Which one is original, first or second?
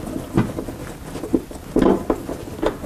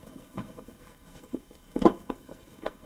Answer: first